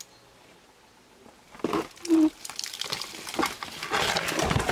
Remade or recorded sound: recorded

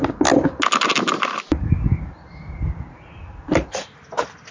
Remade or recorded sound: recorded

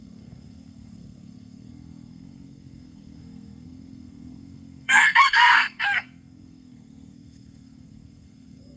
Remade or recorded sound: remade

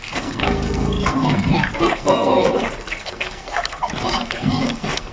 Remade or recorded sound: remade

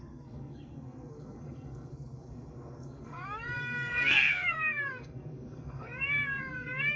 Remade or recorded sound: remade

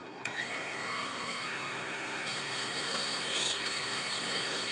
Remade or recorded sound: remade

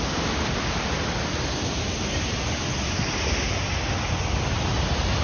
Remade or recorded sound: recorded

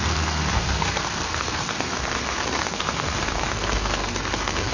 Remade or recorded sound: remade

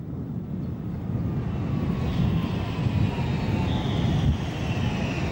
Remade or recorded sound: recorded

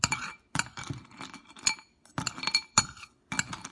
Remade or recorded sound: recorded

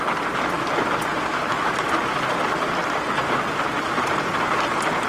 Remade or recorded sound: recorded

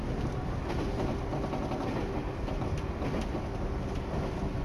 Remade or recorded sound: recorded